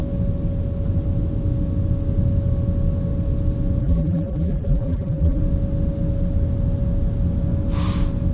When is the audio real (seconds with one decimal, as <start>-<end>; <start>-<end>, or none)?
0.0-3.8; 5.4-8.3